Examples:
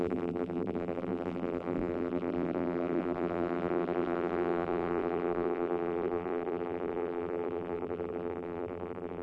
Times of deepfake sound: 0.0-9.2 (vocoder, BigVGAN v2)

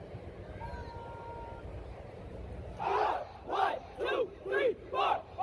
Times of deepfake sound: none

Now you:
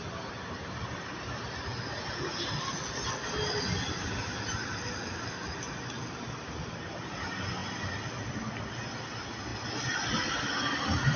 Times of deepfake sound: 9.5-11.2 (vocoder, BigVGAN v2)

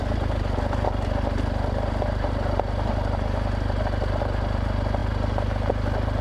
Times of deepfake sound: none

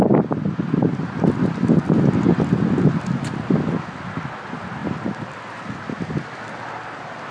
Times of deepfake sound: none